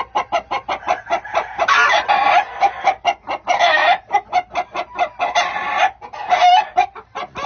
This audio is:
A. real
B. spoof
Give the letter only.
A